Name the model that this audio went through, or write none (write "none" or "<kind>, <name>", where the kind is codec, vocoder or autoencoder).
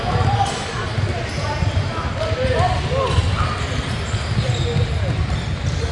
none